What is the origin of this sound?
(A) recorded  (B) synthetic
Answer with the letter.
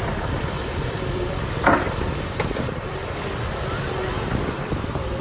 B